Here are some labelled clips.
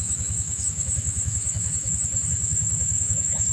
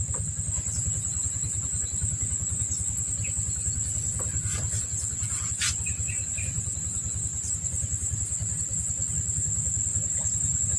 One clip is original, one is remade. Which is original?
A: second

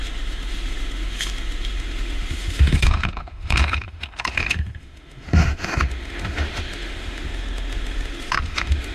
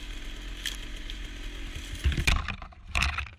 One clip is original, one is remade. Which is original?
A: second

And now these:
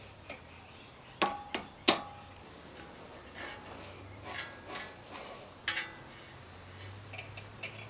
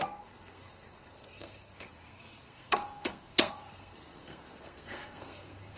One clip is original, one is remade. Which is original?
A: first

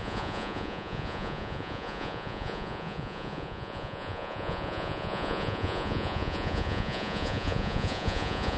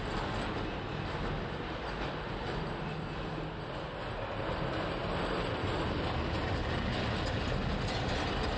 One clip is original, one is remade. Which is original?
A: second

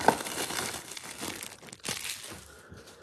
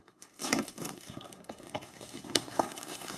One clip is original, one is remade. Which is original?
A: first